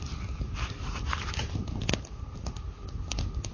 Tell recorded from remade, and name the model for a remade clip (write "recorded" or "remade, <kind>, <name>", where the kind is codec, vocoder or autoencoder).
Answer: recorded